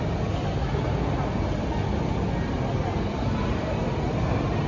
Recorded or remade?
recorded